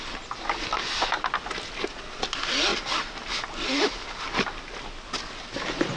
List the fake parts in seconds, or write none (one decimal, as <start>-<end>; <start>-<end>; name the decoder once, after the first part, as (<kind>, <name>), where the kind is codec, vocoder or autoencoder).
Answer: none